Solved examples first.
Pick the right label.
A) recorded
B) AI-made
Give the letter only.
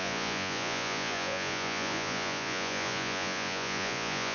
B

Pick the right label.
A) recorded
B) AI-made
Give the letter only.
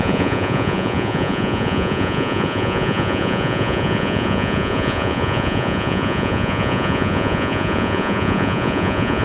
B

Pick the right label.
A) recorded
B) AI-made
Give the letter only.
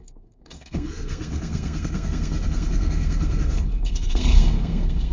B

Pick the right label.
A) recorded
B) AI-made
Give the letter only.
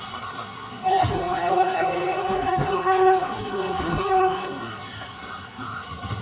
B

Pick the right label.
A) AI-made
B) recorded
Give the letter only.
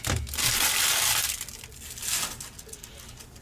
B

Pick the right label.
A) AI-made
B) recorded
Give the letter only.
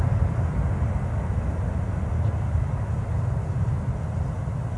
B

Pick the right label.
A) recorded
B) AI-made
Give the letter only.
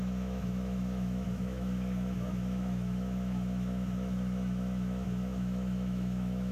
B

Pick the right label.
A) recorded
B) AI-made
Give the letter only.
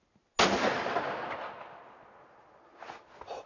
A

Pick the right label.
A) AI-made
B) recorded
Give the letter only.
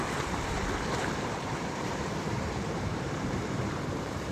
A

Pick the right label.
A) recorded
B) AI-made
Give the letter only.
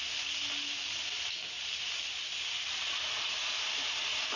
A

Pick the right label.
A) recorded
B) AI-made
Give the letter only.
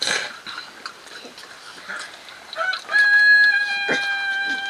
A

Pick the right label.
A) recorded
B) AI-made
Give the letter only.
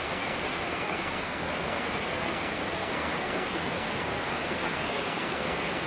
B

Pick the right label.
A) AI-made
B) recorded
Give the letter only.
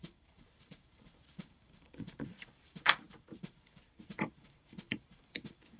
A